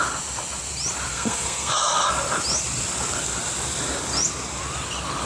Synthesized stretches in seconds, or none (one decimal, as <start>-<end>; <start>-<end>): 1.1-1.7

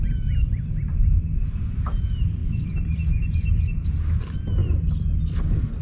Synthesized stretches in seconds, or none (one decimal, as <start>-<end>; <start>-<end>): 2.4-3.6; 4.6-5.8

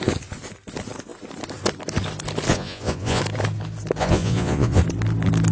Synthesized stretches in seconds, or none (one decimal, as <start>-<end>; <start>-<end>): 2.5-3.2; 4.0-4.8